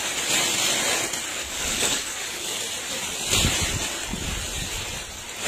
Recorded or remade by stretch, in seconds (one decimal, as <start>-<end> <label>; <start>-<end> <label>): 0.0-1.3 recorded; 1.3-2.6 remade; 2.6-5.5 recorded